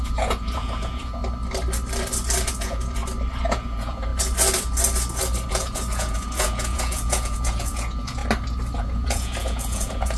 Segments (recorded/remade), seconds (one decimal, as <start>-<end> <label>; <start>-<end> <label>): 0.0-1.2 remade; 1.2-2.5 recorded; 2.5-3.0 remade; 3.0-3.5 recorded; 3.5-4.1 remade; 4.1-5.5 recorded; 5.5-8.2 remade; 8.2-8.8 recorded; 8.8-10.2 remade